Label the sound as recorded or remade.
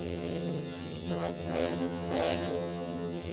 remade